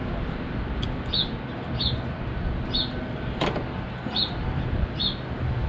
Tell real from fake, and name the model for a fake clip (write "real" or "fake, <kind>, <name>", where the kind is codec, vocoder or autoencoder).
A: real